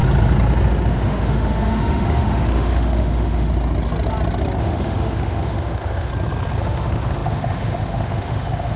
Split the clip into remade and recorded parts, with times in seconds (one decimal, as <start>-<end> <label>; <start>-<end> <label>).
0.0-0.9 recorded; 0.9-3.5 remade; 3.5-4.6 recorded; 4.6-6.1 remade; 6.1-6.6 recorded; 6.6-8.8 remade